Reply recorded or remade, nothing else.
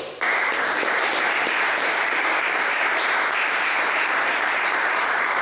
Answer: remade